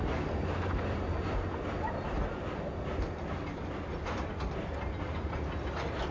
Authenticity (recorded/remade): recorded